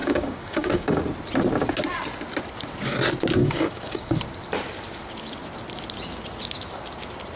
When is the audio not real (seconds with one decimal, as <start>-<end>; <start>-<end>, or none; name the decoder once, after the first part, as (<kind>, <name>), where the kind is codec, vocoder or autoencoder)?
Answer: 0.0-1.0 (codec, DAC); 3.4-4.1